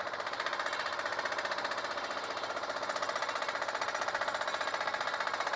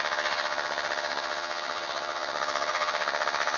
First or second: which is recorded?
first